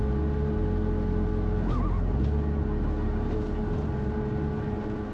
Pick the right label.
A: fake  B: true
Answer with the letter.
B